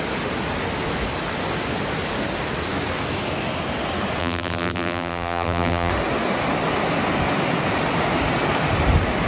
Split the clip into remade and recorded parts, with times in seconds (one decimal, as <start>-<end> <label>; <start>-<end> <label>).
0.0-4.2 recorded; 4.2-5.9 remade; 5.9-9.3 recorded